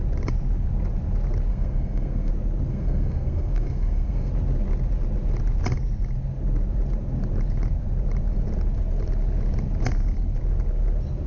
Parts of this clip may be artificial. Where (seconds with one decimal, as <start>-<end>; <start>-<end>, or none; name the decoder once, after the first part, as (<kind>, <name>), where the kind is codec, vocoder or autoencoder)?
1.5-2.3 (codec, SNAC); 2.7-4.3